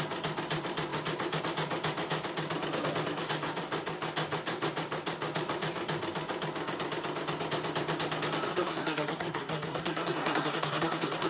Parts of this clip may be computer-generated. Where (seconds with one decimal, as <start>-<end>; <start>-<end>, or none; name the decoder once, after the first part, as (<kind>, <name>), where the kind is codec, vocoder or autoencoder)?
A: 8.5-11.3 (codec, SNAC)